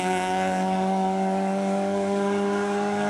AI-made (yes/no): yes